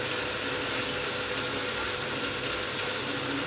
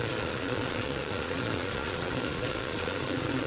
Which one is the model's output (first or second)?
second